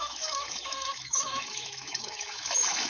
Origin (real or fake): fake